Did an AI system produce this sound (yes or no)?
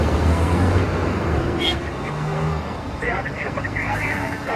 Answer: yes